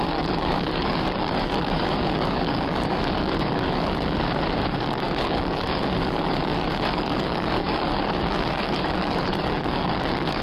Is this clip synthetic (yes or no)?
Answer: yes